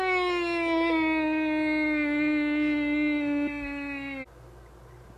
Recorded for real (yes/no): yes